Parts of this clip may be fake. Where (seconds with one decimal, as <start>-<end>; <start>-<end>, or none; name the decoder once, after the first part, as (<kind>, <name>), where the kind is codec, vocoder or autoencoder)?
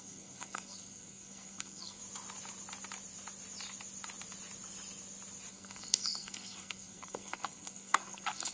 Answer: 0.0-2.0 (codec, SNAC); 5.5-8.5